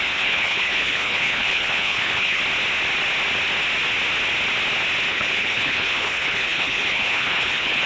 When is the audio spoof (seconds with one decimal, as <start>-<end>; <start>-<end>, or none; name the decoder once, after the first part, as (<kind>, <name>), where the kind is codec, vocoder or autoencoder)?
0.0-2.4 (codec, HILCodec); 5.1-7.9